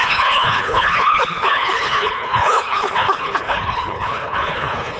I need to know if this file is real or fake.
fake